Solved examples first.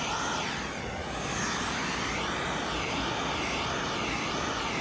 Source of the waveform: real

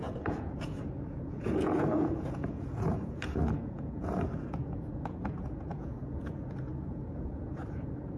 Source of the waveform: fake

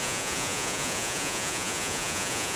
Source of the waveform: fake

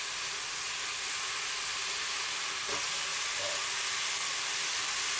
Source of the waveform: real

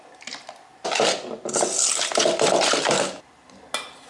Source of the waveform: real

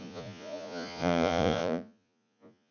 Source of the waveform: fake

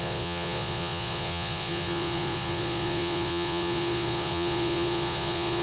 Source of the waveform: fake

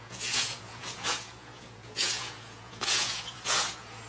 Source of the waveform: fake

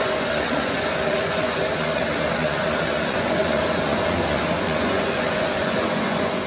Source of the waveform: fake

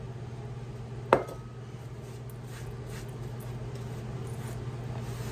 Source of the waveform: real